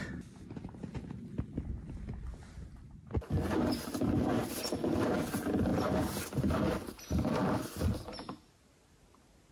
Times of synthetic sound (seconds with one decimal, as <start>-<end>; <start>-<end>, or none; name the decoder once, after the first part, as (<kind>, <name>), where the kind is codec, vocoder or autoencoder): none